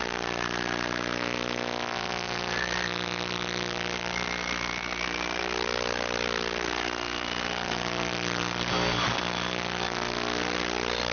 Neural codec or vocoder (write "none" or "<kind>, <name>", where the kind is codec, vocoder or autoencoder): none